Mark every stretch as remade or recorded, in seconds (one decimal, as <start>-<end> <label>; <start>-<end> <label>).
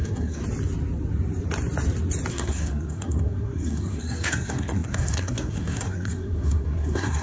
0.0-0.4 remade; 0.4-2.3 recorded; 2.3-7.2 remade